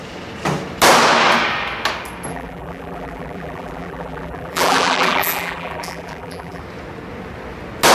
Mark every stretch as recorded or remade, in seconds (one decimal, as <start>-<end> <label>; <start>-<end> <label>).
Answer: 0.0-2.3 recorded; 2.3-6.6 remade; 6.6-7.9 recorded